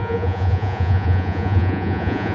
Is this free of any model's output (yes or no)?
no